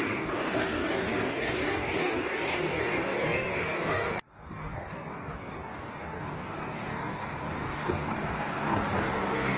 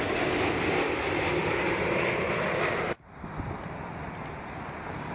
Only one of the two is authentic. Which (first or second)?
second